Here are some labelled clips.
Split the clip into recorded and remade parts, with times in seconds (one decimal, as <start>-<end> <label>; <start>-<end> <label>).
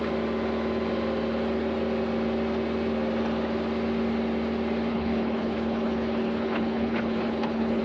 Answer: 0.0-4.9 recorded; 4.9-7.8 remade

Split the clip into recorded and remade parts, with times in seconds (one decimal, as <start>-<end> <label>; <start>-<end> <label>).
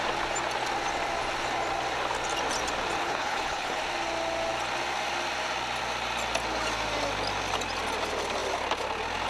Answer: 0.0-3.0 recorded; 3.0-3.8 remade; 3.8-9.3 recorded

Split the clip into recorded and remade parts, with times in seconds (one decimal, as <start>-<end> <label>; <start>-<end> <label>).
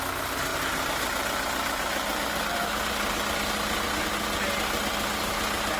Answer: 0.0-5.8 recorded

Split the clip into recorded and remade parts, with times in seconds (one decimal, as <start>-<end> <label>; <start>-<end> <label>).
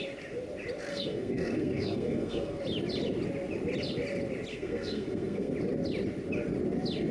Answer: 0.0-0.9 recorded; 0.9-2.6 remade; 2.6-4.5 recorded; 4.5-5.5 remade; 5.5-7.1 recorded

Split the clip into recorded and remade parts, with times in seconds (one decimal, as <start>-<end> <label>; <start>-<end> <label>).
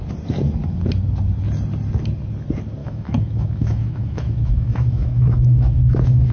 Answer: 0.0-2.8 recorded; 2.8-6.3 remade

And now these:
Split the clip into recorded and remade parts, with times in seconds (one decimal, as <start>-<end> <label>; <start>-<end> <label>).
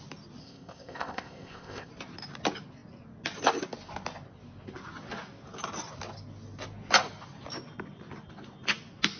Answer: 0.0-0.4 recorded; 0.4-1.9 remade; 1.9-9.2 recorded